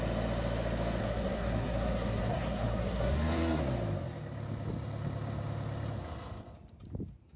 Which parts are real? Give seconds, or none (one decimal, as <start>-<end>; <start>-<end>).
0.0-1.0; 3.6-7.4